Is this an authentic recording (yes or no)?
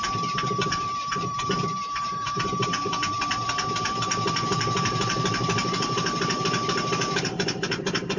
no